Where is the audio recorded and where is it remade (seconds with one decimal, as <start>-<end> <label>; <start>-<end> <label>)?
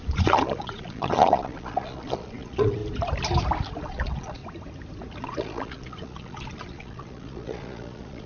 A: 0.0-2.8 remade; 2.8-3.8 recorded; 3.8-4.4 remade; 4.4-5.2 recorded; 5.2-8.3 remade